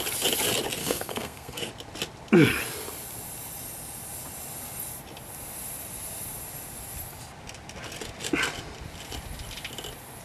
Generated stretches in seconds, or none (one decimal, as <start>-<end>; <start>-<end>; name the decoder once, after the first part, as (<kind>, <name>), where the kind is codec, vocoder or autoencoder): 0.8-1.7 (codec, SNAC)